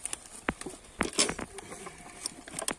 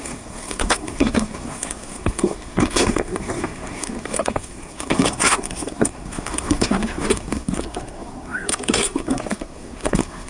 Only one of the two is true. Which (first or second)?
first